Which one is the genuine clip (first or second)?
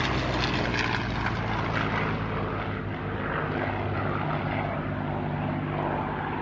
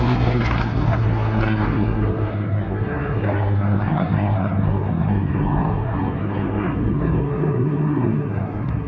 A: first